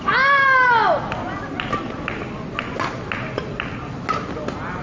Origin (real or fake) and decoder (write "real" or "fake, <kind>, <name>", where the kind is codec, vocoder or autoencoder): real